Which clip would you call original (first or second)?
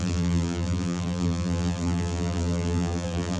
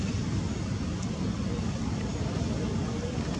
second